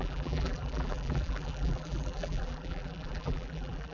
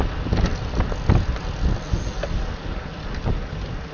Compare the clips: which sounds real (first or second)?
second